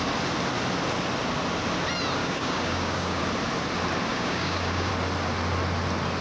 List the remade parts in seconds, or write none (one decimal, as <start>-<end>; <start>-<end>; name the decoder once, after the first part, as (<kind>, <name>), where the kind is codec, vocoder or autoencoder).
2.2-3.2 (codec, DAC); 4.1-4.9

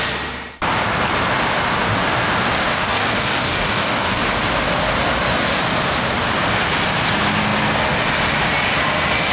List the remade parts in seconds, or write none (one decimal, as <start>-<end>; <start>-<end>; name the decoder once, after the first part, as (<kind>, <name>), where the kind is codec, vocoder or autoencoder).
2.7-4.2 (codec, DAC)

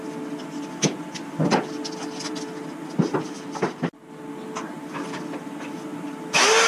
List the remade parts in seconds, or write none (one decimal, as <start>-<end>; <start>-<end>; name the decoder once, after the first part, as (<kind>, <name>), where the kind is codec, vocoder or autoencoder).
none

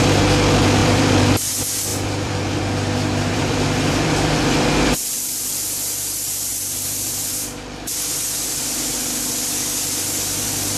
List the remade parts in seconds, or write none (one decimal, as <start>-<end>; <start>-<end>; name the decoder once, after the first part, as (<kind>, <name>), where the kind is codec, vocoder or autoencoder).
0.8-1.5 (vocoder, BigVGAN v2); 1.9-5.4; 6.5-8.1

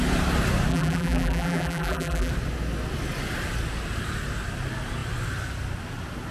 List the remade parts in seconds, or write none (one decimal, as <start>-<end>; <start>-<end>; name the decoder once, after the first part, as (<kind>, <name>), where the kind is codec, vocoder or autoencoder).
0.7-2.3 (vocoder, BigVGAN v2)